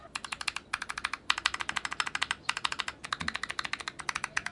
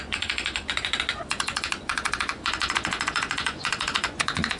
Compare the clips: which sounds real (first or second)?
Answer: first